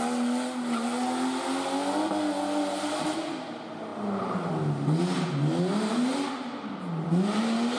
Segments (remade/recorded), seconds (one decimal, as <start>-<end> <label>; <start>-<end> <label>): 0.0-7.8 recorded